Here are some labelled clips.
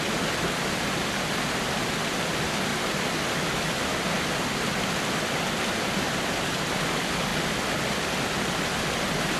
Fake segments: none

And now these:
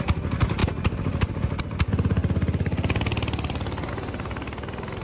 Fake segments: none

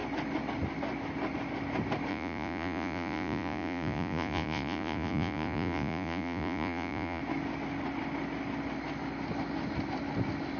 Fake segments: 2.1-7.2 (vocoder, Vocos)

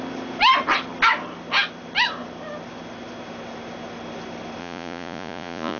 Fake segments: 4.6-5.8 (vocoder, Vocos)